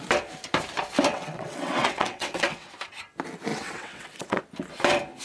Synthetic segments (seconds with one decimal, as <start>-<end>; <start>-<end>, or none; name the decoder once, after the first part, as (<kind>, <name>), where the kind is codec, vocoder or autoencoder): 1.1-2.7 (vocoder, WaveNeXt); 3.5-4.4